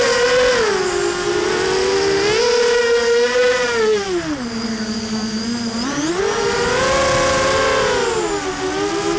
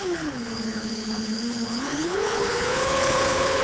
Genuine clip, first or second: first